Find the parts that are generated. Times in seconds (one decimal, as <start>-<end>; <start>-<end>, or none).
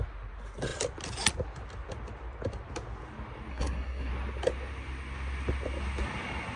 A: 3.5-4.1